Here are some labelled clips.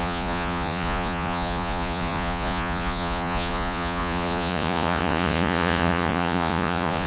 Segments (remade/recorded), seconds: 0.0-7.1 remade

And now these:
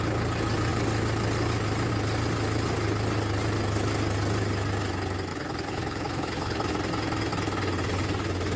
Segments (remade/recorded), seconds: 0.0-5.3 recorded; 5.3-6.7 remade; 6.7-8.6 recorded